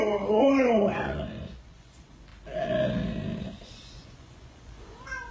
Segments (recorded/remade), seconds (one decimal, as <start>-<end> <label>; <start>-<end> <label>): 0.0-2.3 remade; 2.3-3.4 recorded; 3.4-5.3 remade